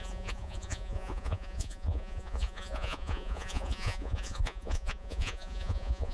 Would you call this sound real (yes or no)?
no